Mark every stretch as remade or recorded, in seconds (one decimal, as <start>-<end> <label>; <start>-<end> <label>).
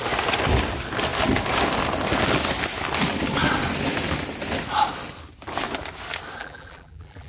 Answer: 0.0-6.4 recorded; 6.4-7.3 remade